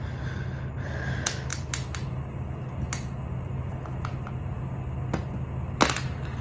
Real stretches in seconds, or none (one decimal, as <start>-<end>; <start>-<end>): 0.0-6.4